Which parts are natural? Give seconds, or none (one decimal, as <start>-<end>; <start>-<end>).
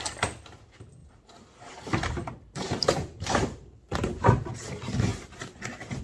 0.0-1.0; 4.6-5.1; 5.6-6.0